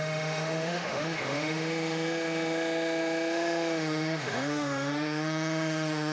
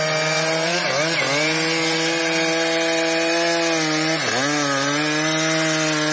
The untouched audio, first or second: second